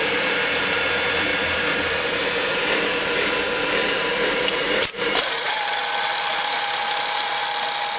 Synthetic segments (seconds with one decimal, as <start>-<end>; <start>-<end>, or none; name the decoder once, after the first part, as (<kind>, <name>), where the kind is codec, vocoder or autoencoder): 0.0-5.8 (vocoder, BigVGAN v2); 6.3-7.4